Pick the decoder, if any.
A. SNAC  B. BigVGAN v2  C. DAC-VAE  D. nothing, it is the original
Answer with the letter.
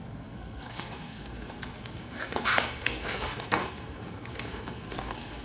A